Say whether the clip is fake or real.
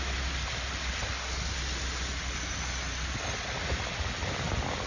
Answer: real